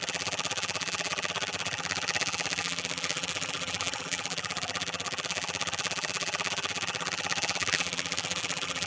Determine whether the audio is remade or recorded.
remade